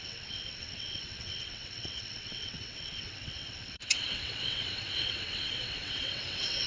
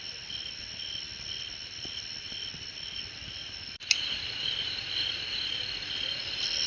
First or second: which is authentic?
second